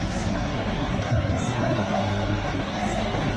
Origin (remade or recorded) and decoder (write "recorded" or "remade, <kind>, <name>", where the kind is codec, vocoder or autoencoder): remade, codec, SNAC